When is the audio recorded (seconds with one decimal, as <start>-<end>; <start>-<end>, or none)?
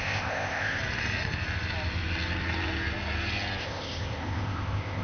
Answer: 0.8-3.6